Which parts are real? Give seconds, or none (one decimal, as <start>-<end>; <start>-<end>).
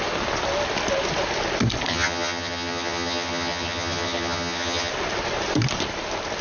0.0-1.9; 4.9-6.4